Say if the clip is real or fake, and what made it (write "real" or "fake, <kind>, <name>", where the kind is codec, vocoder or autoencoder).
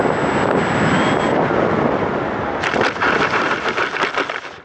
real